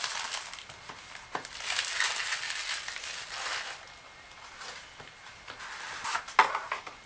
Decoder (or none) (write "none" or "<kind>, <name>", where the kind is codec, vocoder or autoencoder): none